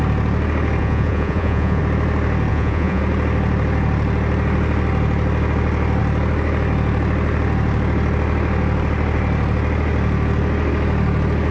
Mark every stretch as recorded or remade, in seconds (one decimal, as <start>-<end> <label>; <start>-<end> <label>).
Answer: 0.0-0.8 recorded; 0.8-1.8 remade; 1.8-2.5 recorded; 2.5-3.0 remade; 3.0-11.5 recorded